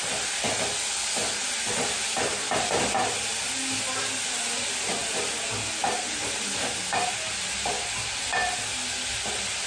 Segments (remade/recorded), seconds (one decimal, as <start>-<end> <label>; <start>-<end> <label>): 0.0-2.3 recorded; 2.3-3.0 remade; 3.0-9.7 recorded